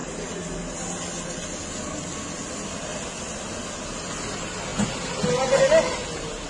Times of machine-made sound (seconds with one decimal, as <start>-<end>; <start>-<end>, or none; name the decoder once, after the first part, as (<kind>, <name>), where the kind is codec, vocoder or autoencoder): none